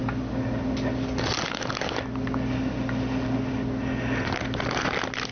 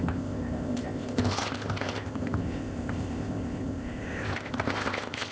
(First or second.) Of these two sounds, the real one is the first